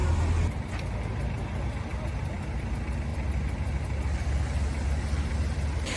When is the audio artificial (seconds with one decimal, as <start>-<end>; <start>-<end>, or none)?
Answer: none

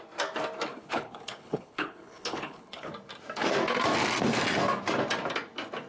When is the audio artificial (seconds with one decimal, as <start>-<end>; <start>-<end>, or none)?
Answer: 0.7-2.9

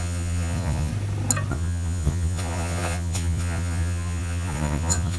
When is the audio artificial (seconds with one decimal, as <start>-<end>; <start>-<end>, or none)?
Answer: 0.0-0.9; 1.5-5.2

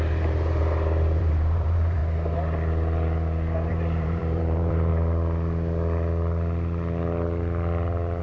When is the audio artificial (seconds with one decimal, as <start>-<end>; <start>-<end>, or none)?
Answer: 0.0-0.6; 1.2-2.0; 3.7-4.9

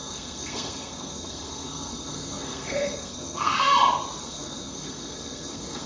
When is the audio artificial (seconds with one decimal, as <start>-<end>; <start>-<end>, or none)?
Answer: 0.0-3.7; 4.2-5.9

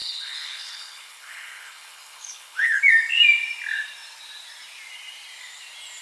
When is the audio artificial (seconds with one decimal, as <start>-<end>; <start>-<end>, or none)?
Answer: 0.0-2.8